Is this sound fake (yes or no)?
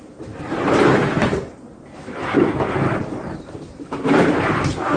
yes